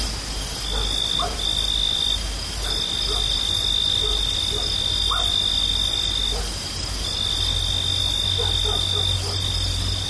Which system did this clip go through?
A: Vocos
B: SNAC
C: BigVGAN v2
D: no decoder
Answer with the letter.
D